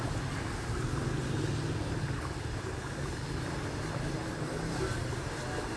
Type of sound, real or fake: real